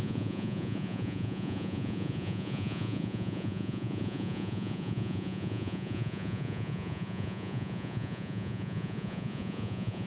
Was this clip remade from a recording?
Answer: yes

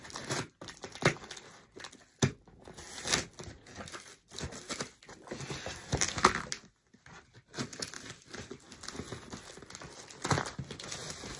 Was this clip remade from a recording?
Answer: no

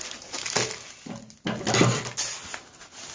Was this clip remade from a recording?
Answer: no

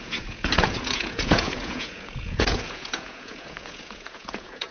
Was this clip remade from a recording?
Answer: yes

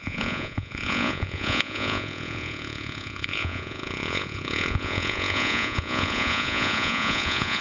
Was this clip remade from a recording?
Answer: yes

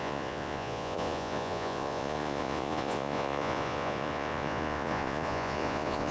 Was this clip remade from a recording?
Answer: yes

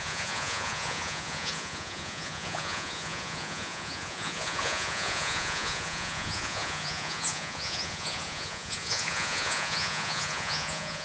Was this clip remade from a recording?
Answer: yes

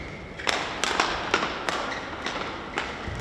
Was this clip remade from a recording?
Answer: no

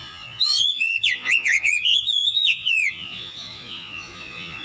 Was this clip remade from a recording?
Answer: yes